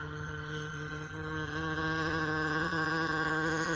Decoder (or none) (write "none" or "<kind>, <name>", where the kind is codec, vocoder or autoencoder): vocoder, HiFi-GAN